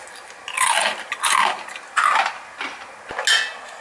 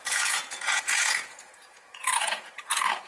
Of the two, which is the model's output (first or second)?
second